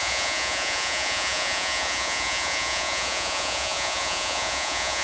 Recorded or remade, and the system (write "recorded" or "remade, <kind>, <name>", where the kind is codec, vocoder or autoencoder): remade, vocoder, Vocos